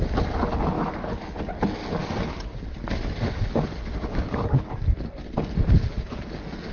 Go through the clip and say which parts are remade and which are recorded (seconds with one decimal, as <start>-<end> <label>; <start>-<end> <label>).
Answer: 0.0-6.7 recorded